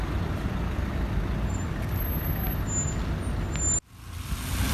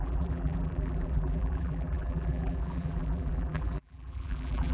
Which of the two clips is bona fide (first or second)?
first